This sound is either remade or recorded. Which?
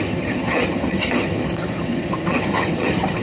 remade